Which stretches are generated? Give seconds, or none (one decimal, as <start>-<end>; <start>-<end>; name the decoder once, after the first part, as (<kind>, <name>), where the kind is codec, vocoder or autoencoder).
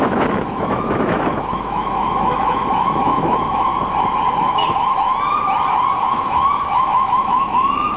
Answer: 0.0-3.7 (autoencoder, DAC-VAE); 4.4-5.1; 6.0-8.0